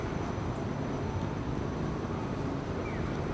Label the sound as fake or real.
real